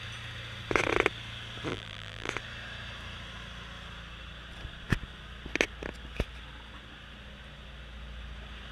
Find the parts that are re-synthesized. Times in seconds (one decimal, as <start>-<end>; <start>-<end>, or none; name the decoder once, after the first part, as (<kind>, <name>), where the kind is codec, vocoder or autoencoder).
1.7-2.3 (vocoder, BigVGAN v2)